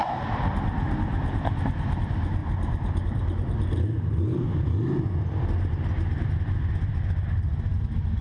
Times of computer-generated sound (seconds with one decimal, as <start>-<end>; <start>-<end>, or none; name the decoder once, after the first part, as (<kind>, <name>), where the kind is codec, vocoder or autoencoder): none